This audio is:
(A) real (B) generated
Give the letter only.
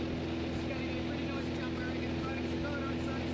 A